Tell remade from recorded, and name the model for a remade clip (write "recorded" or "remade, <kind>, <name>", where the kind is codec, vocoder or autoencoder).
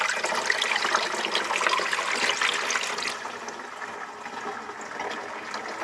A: recorded